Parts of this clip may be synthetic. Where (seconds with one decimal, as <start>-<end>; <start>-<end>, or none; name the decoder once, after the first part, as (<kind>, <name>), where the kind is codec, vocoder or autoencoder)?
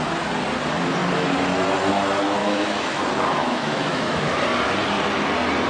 2.4-3.0 (autoencoder, DAC-VAE); 3.4-4.4